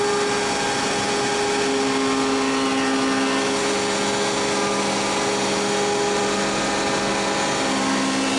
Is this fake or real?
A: real